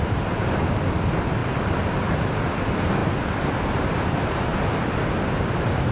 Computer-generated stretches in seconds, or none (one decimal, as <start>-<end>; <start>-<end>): 0.0-4.5